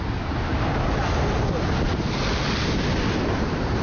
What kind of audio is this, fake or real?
real